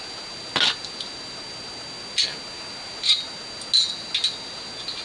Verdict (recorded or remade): recorded